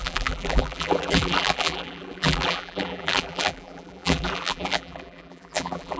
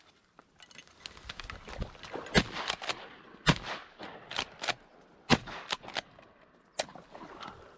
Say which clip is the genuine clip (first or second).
second